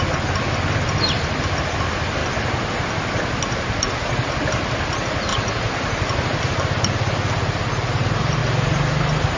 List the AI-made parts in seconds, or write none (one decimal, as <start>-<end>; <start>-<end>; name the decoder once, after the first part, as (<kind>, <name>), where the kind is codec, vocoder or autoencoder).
none